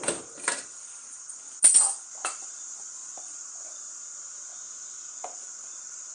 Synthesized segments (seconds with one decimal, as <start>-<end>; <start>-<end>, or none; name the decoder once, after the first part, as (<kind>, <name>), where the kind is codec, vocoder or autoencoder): 0.0-4.5 (vocoder, BigVGAN v2); 5.2-6.1